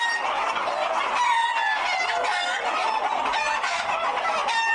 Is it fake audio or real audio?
real